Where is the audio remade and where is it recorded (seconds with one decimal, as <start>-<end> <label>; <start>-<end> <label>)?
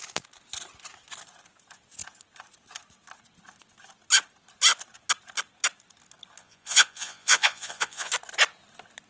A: 0.0-6.4 recorded; 6.4-8.1 remade; 8.1-9.1 recorded